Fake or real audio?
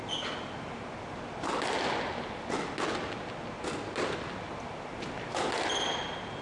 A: real